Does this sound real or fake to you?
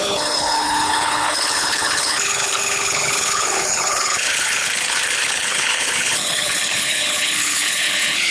fake